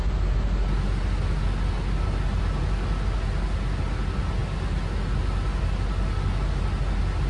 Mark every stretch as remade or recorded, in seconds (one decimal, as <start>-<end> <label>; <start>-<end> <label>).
0.0-7.3 recorded